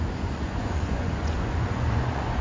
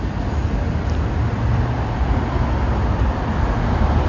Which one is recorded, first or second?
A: second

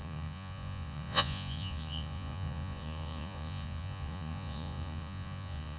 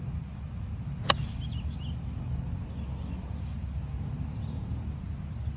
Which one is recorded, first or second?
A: second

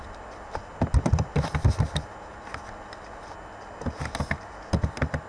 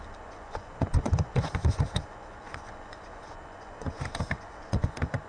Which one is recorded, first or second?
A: first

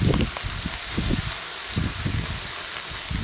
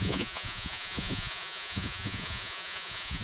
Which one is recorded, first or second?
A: first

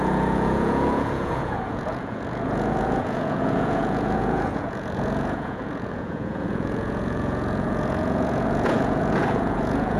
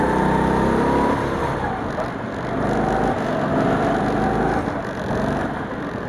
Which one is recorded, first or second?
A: second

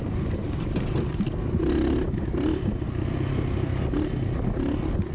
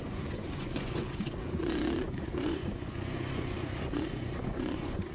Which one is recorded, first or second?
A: first